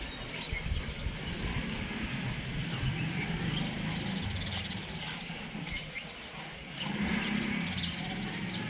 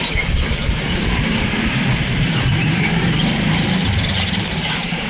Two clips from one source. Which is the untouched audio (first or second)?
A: first